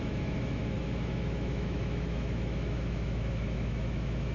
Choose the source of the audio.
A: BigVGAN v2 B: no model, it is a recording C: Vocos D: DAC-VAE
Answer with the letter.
D